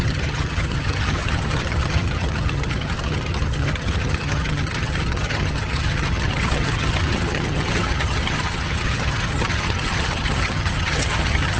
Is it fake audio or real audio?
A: fake